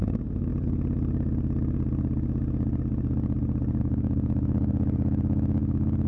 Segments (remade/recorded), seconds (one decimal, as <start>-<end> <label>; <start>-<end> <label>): 0.0-0.5 remade; 0.5-3.8 recorded; 3.8-6.1 remade